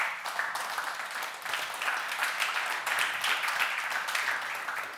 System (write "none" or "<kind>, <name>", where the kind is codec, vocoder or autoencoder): none